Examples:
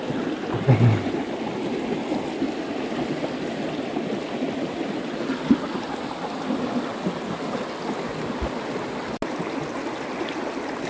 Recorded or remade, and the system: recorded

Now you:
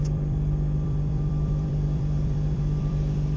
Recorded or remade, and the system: remade, vocoder, BigVGAN v2